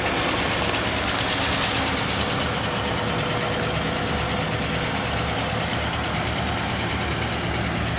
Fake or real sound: real